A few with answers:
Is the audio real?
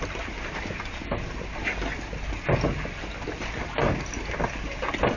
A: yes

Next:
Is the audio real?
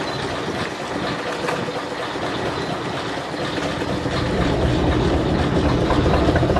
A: yes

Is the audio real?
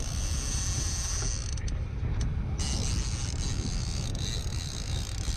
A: yes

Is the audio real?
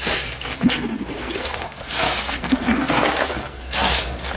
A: no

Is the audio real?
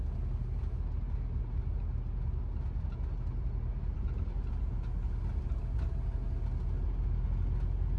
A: yes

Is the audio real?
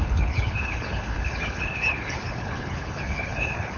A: no